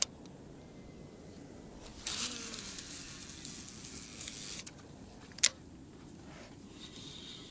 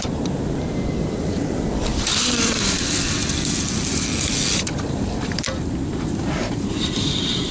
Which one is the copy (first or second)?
second